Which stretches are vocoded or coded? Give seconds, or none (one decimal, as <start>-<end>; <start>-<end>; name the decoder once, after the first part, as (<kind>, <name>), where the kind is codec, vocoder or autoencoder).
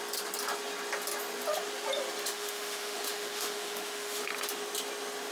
2.3-4.2 (autoencoder, DAC-VAE)